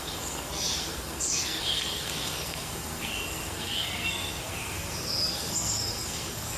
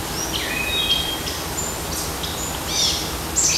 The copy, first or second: first